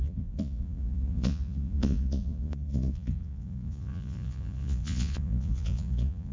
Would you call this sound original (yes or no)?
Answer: no